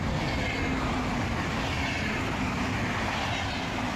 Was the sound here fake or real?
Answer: real